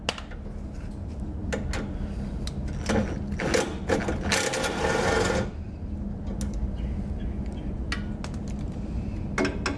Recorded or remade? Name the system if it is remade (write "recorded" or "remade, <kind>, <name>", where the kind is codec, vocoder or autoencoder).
recorded